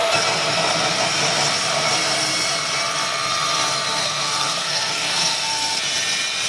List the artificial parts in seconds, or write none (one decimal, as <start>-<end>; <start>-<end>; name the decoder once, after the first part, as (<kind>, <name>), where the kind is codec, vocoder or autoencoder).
4.0-5.8 (codec, SNAC)